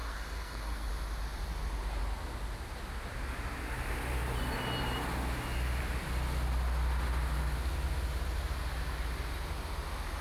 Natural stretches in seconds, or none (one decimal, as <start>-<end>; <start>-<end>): 0.9-10.2